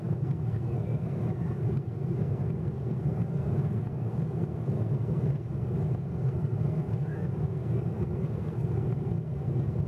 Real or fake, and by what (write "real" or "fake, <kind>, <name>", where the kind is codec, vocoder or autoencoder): fake, codec, SNAC